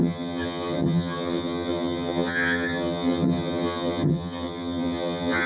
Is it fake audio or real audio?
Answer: fake